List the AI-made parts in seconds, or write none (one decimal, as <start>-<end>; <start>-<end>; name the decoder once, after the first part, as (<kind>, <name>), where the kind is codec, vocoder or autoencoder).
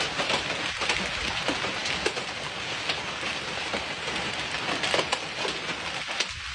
none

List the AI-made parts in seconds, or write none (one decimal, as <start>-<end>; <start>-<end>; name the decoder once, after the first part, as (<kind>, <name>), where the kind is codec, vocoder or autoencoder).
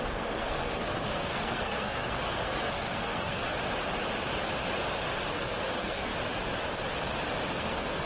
0.0-3.5 (codec, SNAC); 5.3-6.1; 7.5-8.1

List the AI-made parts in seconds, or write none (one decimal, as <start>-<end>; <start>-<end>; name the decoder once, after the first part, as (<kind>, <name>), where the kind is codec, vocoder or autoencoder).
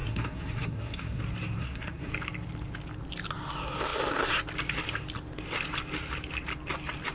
0.0-1.2 (codec, SNAC); 1.6-2.1